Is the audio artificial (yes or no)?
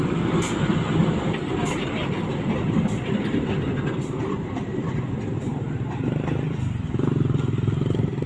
no